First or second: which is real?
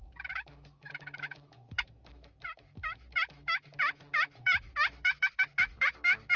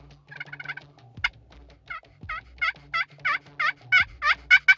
second